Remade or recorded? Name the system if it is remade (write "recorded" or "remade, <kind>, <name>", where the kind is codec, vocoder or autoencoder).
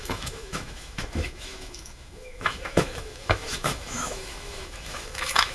remade, autoencoder, DAC-VAE